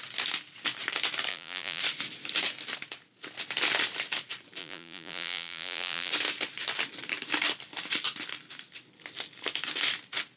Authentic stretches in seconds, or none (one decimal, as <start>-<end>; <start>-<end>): 0.0-1.3; 1.8-4.6; 6.1-10.4